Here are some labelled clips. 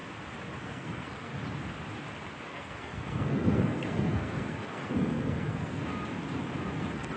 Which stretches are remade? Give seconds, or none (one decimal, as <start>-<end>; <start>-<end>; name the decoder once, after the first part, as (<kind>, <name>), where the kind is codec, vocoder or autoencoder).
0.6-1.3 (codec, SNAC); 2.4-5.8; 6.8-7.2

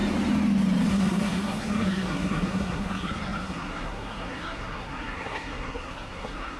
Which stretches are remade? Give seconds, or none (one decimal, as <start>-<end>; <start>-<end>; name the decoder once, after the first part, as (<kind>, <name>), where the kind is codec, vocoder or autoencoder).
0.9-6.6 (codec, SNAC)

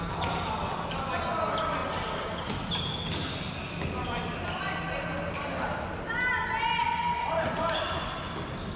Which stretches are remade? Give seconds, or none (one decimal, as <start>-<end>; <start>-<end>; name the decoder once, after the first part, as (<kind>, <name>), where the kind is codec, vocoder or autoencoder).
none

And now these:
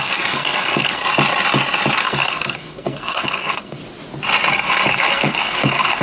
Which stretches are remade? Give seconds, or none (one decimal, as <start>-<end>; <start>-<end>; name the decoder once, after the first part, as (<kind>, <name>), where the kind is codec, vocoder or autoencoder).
0.0-1.0 (codec, SNAC); 2.0-3.8; 4.9-6.0

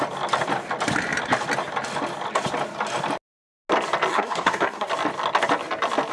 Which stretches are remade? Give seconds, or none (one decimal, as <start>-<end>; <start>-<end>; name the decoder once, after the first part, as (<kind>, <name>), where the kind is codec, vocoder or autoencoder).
4.1-4.9 (codec, SNAC)

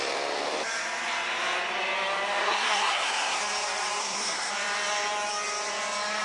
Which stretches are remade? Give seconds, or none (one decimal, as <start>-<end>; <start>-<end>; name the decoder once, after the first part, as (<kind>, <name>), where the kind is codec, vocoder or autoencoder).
2.4-3.4 (codec, SNAC); 4.0-4.5